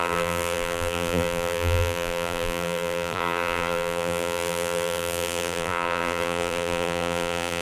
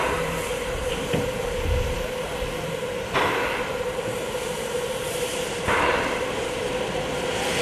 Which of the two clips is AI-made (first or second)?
first